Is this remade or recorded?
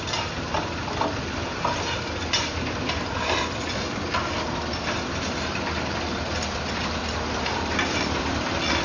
recorded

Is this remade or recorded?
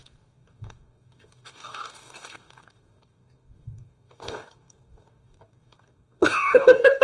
remade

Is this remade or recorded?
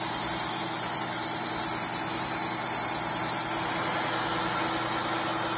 recorded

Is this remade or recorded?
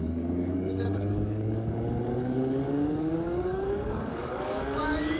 remade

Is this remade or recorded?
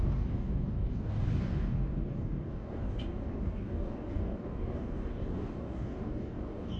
remade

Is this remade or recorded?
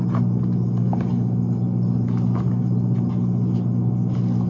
recorded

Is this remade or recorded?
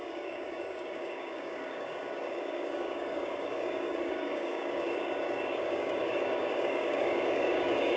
remade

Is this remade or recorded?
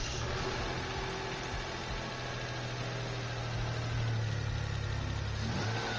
recorded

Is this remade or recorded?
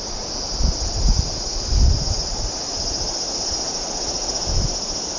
recorded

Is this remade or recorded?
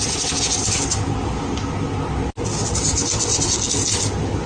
recorded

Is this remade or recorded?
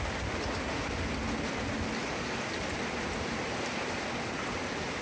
recorded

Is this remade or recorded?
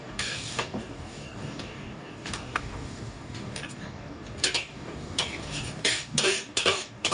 remade